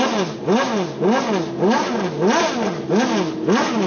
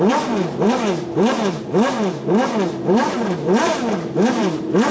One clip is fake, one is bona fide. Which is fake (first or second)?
second